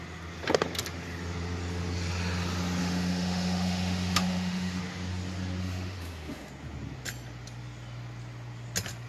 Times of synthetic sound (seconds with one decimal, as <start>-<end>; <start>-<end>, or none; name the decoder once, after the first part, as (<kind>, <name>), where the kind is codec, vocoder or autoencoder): 2.8-4.8 (autoencoder, DAC-VAE); 5.6-6.5